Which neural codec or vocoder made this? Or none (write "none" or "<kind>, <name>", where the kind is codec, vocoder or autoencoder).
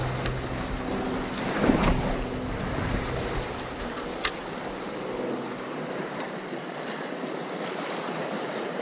none